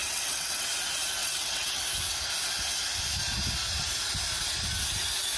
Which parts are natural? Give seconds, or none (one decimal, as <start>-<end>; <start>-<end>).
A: 0.7-1.2; 1.8-5.4